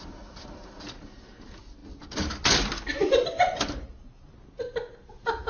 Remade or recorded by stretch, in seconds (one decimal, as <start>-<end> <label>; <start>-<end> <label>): 0.0-5.5 recorded

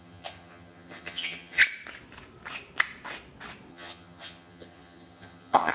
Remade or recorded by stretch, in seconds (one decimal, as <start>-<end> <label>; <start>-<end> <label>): 0.0-1.6 remade; 1.6-3.7 recorded; 3.7-5.7 remade

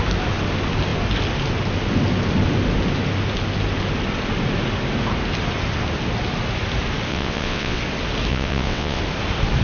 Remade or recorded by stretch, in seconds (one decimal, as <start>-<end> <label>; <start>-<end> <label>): 0.0-7.1 recorded; 7.1-7.8 remade; 7.8-8.3 recorded; 8.3-9.0 remade; 9.0-9.6 recorded